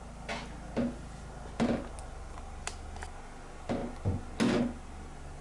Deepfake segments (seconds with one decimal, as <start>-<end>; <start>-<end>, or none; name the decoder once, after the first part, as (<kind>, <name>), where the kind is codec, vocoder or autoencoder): none